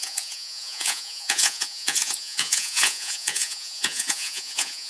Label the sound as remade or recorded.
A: remade